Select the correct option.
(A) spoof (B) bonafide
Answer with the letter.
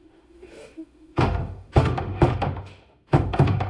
A